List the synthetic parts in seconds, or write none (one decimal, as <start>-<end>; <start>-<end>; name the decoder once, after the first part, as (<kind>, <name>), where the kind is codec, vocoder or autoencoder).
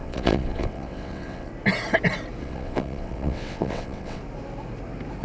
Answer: 0.0-1.5 (vocoder, WaveNeXt); 2.4-4.2